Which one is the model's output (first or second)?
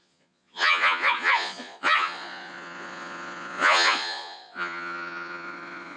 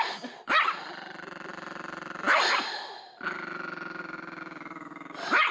first